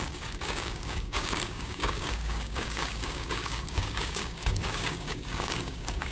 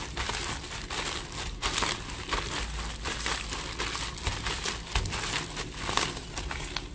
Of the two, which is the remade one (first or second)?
first